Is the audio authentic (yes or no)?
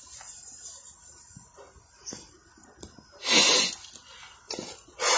yes